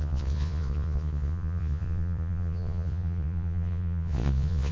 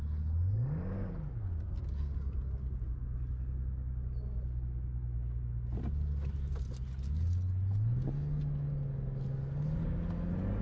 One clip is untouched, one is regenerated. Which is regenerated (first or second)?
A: first